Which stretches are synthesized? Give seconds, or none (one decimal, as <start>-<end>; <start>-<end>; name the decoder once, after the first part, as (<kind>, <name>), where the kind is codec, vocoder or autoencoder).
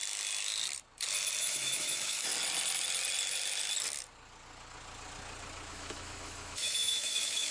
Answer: 1.4-2.3 (autoencoder, DAC-VAE); 5.7-7.5